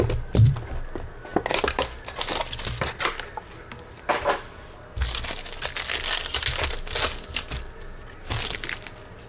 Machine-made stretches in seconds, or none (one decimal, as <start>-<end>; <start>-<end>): none